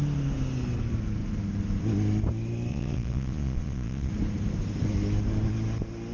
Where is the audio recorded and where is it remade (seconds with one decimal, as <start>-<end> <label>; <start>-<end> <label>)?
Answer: 0.0-2.7 recorded; 2.7-4.1 remade; 4.1-6.1 recorded